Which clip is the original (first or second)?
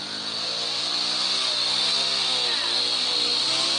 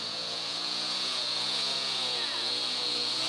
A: first